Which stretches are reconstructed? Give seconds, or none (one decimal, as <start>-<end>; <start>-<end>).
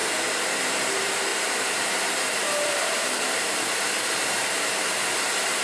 0.6-5.6